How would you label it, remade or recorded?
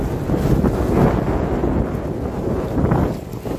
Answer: recorded